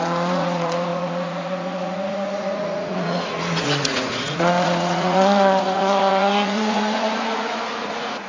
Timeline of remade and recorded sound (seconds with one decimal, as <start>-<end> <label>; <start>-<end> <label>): 0.0-8.3 remade